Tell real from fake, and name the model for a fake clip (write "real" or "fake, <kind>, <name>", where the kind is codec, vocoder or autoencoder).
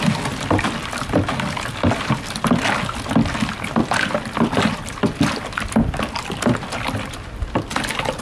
real